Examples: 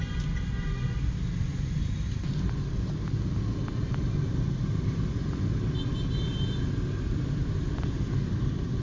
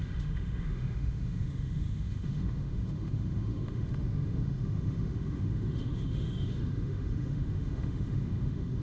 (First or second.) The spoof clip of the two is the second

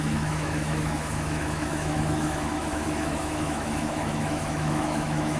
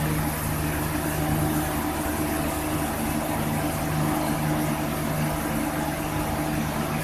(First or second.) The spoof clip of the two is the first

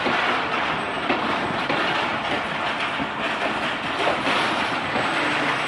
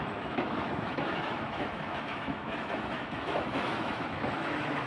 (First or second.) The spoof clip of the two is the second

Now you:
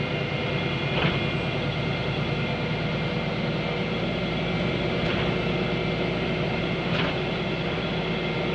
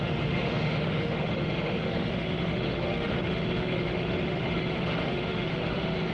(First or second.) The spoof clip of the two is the second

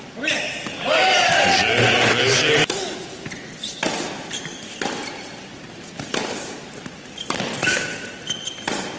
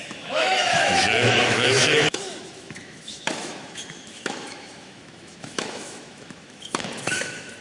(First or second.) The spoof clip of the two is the second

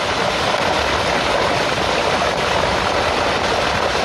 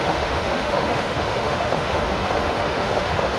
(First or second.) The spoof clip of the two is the second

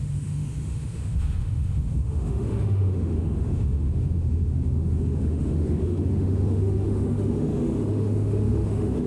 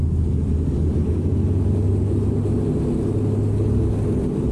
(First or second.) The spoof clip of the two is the first